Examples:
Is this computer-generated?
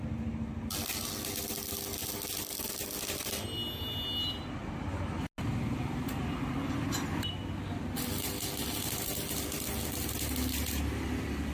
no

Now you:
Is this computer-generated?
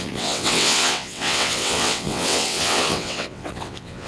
yes